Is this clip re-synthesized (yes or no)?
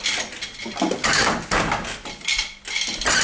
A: no